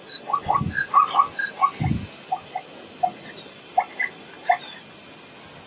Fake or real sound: real